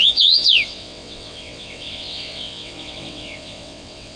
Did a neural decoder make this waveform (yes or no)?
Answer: yes